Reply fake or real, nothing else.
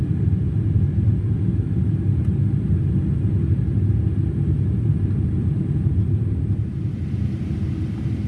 real